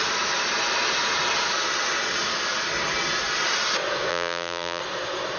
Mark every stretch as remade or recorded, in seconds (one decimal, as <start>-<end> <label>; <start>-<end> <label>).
0.0-4.1 recorded; 4.1-4.8 remade; 4.8-5.4 recorded